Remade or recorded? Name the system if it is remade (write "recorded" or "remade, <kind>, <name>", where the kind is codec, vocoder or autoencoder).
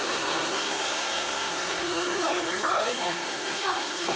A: remade, codec, SNAC